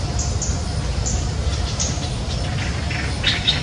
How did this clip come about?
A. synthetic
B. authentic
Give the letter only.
B